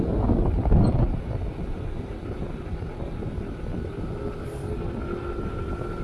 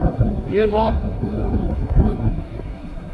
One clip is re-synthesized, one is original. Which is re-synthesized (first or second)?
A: second